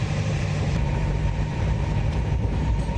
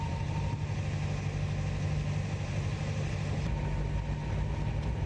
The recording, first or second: second